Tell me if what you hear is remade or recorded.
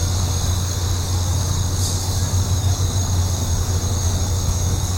remade